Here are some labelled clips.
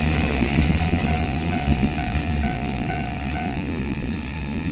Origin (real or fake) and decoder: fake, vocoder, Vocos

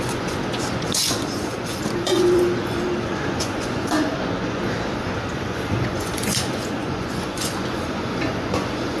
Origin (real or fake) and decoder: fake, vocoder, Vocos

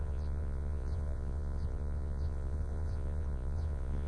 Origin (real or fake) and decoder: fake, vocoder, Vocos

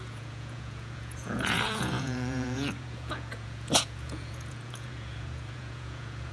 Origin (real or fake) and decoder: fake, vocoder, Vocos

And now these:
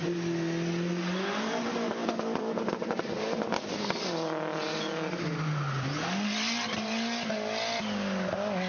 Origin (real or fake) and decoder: real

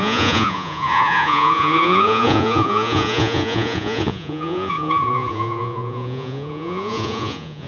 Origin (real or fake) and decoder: fake, vocoder, Vocos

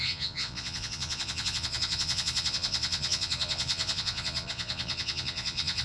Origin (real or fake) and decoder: fake, vocoder, Vocos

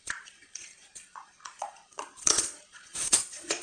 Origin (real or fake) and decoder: fake, vocoder, Vocos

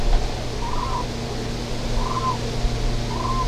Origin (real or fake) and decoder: real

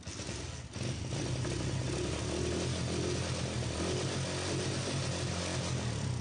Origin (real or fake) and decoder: real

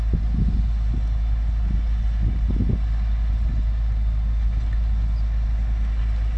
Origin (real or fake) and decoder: real